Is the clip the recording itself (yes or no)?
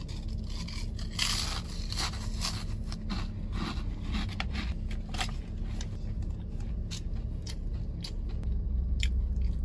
yes